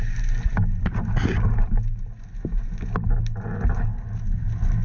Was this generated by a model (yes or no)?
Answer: no